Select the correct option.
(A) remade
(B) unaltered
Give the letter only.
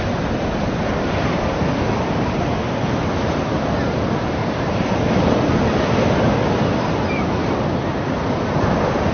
B